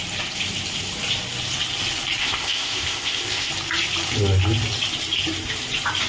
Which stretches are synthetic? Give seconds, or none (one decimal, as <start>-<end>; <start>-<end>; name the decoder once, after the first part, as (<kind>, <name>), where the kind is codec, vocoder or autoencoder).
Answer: 2.2-3.5 (codec, ZipCodec)

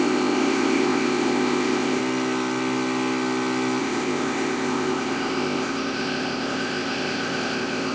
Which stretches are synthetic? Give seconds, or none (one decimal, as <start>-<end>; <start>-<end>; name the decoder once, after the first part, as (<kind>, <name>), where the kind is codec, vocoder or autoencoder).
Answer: 0.0-2.0 (codec, ZipCodec); 3.8-7.9

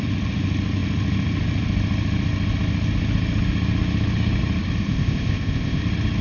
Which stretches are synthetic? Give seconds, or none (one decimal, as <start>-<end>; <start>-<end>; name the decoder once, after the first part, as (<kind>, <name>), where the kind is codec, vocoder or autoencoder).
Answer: 4.9-5.8 (codec, ZipCodec)

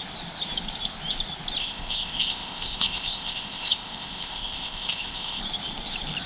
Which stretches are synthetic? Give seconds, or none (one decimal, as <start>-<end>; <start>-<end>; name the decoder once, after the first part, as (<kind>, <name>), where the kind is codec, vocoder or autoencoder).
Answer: 1.6-5.4 (codec, ZipCodec)

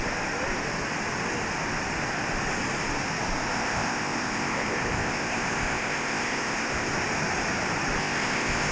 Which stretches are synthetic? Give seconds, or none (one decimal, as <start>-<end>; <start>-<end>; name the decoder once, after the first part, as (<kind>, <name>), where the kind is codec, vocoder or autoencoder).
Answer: 3.5-6.9 (codec, ZipCodec); 8.0-8.7

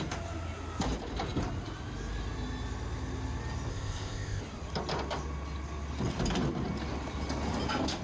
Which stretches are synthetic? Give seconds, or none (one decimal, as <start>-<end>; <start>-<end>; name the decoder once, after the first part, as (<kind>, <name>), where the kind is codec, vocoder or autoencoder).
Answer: 3.7-4.4 (codec, ZipCodec)

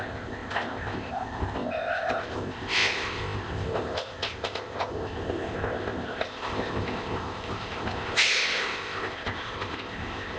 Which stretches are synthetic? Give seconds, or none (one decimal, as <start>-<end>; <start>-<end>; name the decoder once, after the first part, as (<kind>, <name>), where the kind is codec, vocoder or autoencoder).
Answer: 0.0-10.4 (codec, ZipCodec)

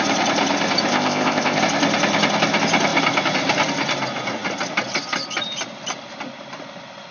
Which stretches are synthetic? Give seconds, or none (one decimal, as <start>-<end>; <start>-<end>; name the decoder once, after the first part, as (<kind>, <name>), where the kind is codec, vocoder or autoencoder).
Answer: 0.9-1.6 (codec, ZipCodec)